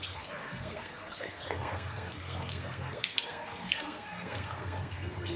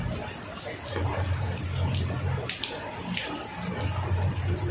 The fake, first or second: first